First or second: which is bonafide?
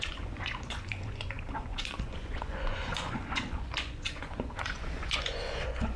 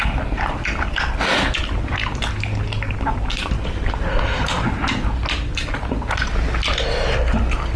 second